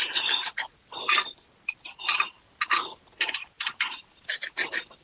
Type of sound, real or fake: real